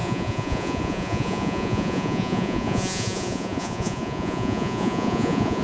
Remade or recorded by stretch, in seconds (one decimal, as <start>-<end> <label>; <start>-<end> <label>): 0.0-5.6 remade